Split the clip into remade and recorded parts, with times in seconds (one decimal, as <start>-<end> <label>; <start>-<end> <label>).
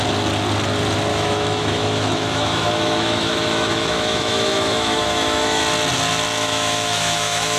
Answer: 0.0-1.1 recorded; 1.1-5.6 remade; 5.6-6.4 recorded; 6.4-7.6 remade